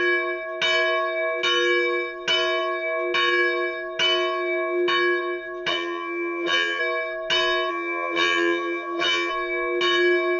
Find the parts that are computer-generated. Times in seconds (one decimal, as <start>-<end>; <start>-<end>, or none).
5.7-6.8; 7.7-9.3